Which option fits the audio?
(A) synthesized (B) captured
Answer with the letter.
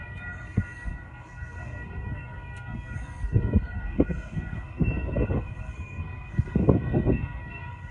A